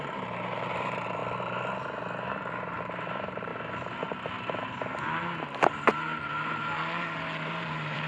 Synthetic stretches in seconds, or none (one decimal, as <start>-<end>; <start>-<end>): 0.0-1.2; 2.8-3.5; 4.4-8.1